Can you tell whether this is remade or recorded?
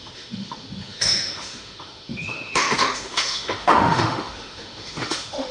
remade